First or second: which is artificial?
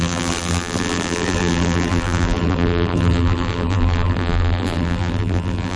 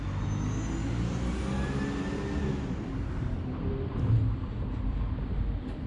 first